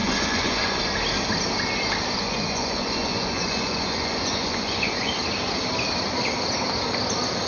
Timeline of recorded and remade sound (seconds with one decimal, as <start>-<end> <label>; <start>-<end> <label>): 0.0-0.8 remade; 0.8-2.2 recorded; 2.2-5.1 remade; 5.1-7.5 recorded